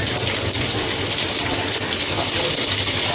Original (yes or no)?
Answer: yes